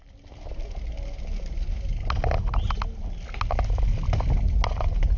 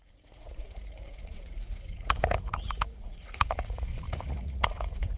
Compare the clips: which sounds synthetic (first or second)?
second